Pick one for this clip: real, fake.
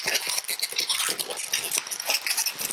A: real